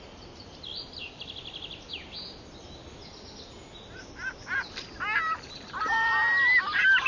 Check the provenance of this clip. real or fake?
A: real